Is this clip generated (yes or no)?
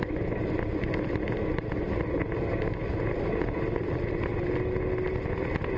no